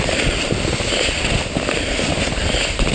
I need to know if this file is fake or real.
real